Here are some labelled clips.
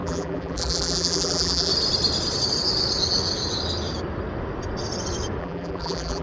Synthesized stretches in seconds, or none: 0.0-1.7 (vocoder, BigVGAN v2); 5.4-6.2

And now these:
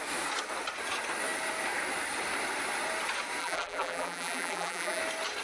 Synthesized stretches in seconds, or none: 3.4-5.0 (vocoder, BigVGAN v2)

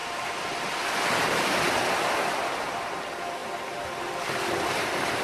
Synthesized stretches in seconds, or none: none

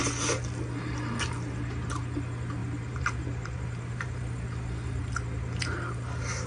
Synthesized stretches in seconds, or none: 2.6-4.2 (vocoder, BigVGAN v2)

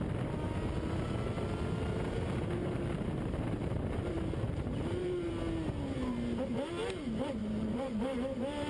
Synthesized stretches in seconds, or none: 2.6-5.3 (vocoder, BigVGAN v2); 7.4-8.7

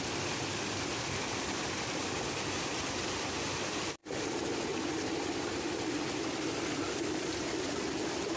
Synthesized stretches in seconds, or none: 0.0-4.0 (vocoder, BigVGAN v2)

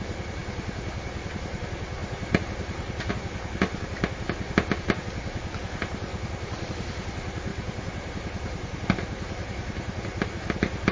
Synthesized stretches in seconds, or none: 2.0-3.1 (vocoder, BigVGAN v2); 6.1-6.7; 7.5-10.9

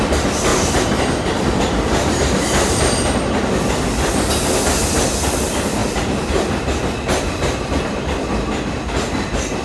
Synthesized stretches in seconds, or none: 0.5-4.1 (vocoder, BigVGAN v2)